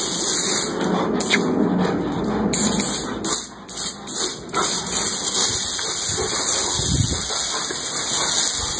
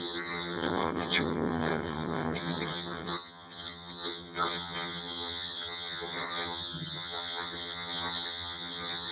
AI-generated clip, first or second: second